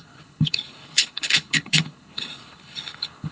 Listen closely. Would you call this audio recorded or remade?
remade